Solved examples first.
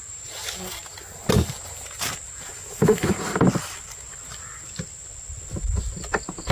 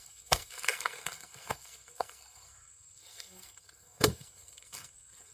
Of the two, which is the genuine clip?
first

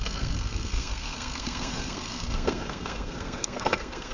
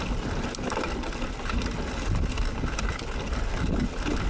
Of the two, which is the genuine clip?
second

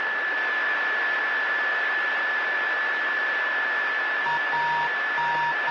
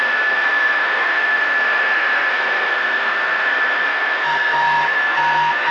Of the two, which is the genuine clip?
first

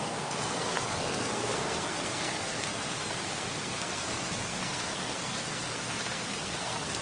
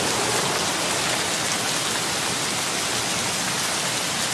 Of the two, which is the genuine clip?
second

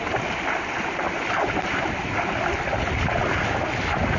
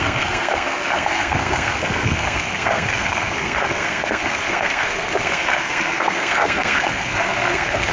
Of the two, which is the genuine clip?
first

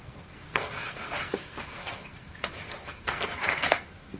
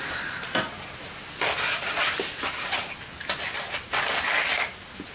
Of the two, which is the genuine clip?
second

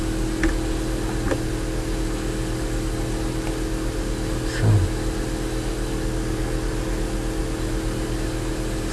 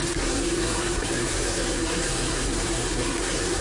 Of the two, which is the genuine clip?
first